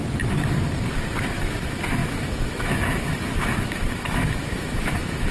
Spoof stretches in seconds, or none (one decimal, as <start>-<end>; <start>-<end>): 1.4-5.3